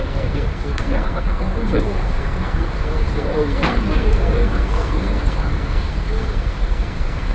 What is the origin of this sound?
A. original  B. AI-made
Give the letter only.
B